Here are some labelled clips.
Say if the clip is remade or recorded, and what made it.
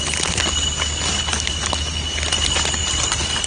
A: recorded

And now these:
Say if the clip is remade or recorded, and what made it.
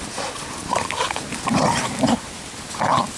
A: remade, vocoder, BigVGAN v2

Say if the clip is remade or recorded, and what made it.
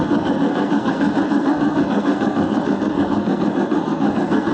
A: remade, codec, SNAC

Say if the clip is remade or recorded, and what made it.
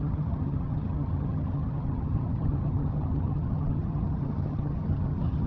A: remade, vocoder, HiFi-GAN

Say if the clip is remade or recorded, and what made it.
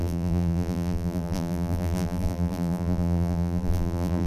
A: remade, vocoder, BigVGAN v2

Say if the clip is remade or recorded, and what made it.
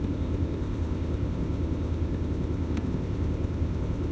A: remade, codec, ZipCodec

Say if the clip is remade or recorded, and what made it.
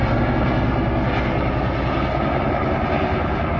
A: recorded